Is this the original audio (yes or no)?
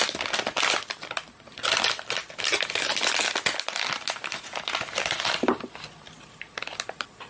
yes